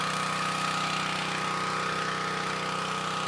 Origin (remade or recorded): recorded